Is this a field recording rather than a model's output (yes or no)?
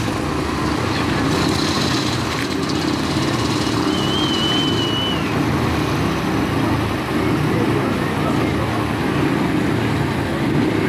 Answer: yes